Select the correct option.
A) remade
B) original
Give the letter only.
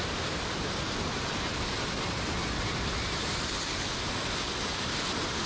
B